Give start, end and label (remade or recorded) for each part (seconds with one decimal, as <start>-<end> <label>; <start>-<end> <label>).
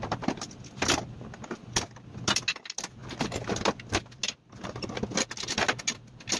0.0-6.4 recorded